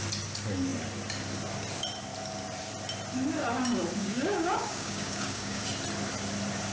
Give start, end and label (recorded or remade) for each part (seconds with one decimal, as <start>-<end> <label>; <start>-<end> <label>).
0.0-4.0 recorded; 4.0-5.6 remade; 5.6-6.7 recorded